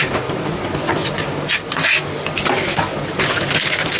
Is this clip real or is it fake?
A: real